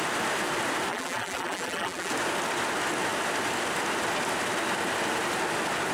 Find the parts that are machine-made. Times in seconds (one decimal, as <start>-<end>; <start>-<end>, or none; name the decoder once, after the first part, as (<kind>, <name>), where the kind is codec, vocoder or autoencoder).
0.9-2.1 (vocoder, BigVGAN v2)